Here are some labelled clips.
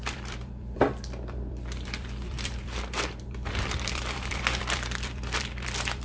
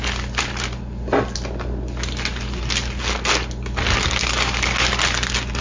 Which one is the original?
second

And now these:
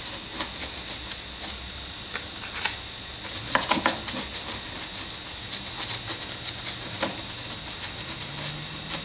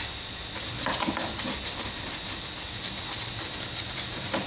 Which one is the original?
first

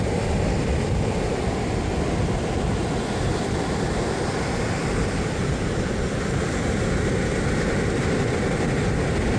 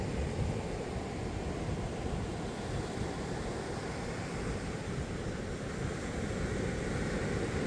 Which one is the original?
first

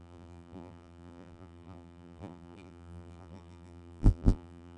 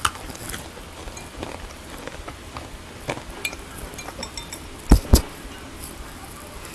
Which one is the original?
second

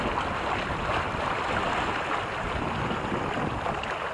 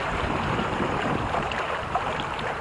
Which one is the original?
first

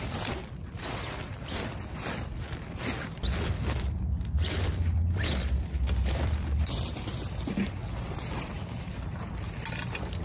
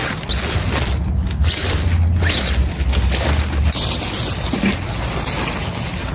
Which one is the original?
second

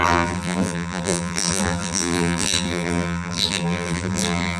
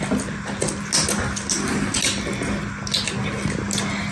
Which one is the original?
second